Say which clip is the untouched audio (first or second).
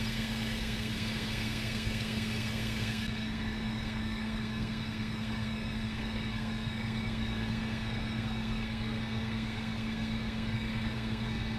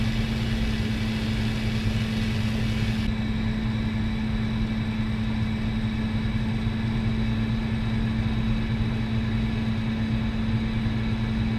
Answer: second